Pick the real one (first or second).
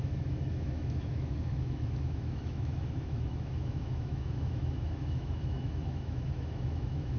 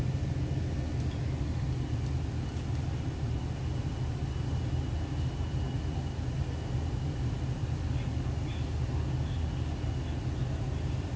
second